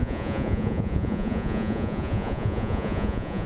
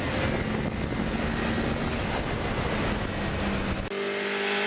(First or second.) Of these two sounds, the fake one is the first